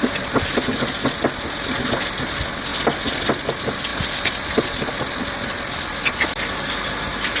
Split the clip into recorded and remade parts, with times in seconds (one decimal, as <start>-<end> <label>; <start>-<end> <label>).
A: 0.0-2.7 recorded; 2.7-3.3 remade; 3.3-7.4 recorded